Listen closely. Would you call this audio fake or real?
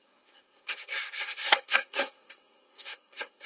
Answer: fake